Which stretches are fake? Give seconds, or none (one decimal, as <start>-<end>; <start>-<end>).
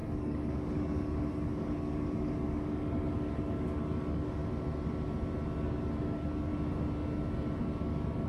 0.0-4.4; 5.6-6.5; 7.6-8.3